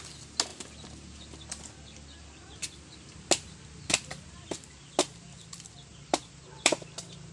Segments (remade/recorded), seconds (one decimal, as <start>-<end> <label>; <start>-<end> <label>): 0.0-5.9 recorded; 5.9-7.3 remade